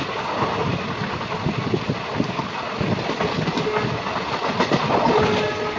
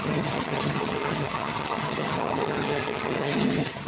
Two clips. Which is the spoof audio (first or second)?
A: second